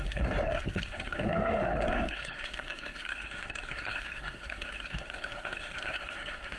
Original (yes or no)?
no